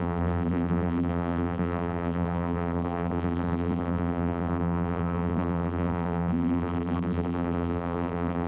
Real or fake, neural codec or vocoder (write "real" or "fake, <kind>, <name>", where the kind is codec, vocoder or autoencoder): fake, vocoder, BigVGAN v2